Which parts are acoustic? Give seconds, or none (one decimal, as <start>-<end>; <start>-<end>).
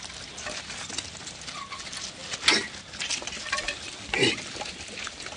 0.0-5.4